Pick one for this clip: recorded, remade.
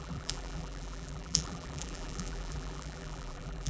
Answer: remade